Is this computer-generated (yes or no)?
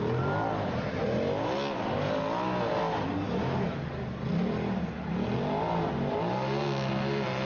no